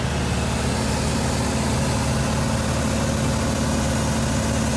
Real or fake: real